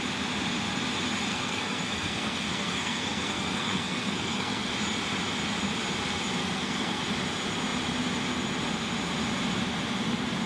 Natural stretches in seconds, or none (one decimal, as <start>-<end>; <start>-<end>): 0.0-1.3; 4.7-6.4; 7.0-10.5

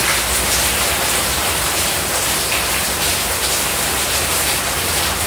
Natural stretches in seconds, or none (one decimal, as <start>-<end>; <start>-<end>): 0.0-1.4; 4.6-5.3

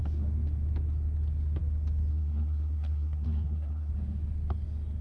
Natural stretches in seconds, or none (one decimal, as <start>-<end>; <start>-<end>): 0.0-2.1; 3.9-5.0

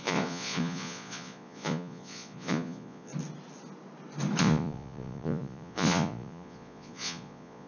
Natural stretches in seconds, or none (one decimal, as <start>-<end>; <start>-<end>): 3.1-4.4